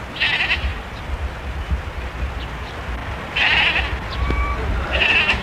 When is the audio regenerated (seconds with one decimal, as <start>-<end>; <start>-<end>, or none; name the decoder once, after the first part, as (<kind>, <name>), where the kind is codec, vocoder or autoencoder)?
0.7-2.3 (vocoder, BigVGAN v2); 3.0-3.8